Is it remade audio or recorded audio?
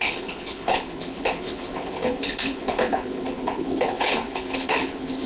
remade